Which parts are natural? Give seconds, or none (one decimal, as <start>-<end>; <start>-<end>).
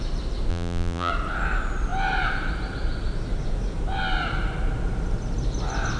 0.0-0.5; 1.1-6.0